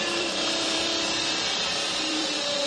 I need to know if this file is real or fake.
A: fake